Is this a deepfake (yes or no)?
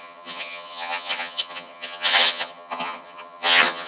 yes